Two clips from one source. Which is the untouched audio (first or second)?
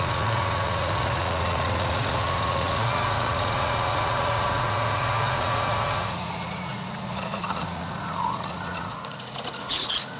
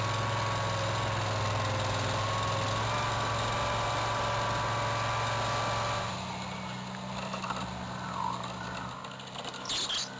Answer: second